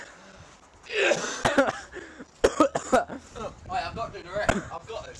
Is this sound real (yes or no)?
yes